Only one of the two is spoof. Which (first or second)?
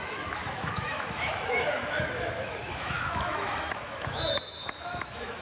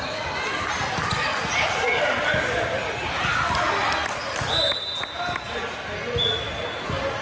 first